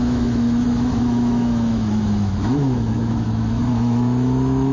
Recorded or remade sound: remade